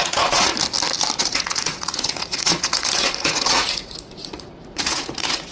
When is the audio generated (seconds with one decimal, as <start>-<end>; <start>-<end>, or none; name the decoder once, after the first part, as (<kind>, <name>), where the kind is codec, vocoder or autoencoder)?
0.0-0.5 (vocoder, Vocos); 1.2-5.5